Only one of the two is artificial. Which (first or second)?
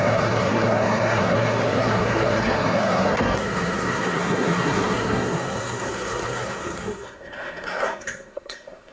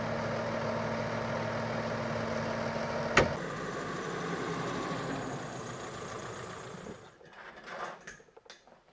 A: first